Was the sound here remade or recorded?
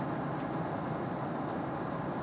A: recorded